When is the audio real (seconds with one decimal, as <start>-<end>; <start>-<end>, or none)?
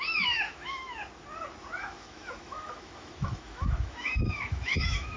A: 1.0-1.8